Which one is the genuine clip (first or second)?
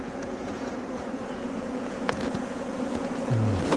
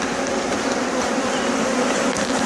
second